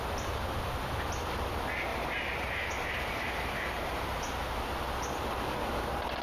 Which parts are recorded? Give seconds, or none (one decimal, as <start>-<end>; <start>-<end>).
0.0-1.9; 4.2-6.2